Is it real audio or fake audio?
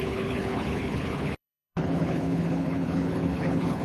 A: fake